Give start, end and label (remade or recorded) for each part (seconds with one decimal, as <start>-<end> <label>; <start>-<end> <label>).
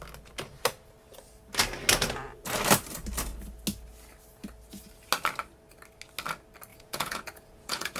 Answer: 0.0-6.7 recorded; 6.7-8.0 remade